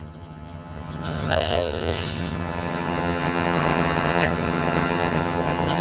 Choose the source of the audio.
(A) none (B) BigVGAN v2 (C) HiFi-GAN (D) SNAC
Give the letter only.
C